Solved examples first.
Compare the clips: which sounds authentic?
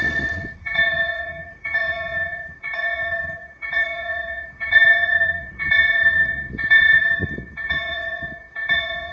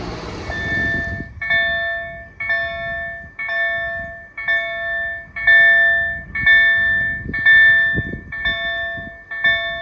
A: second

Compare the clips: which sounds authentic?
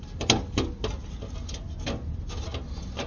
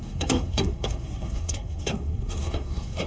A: first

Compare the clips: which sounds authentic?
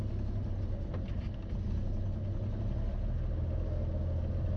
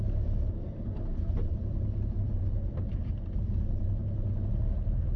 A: first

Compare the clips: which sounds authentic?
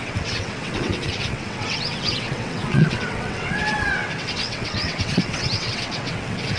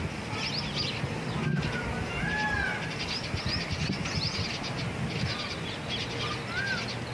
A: second